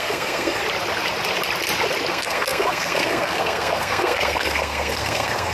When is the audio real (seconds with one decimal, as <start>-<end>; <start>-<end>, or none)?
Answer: 0.6-2.1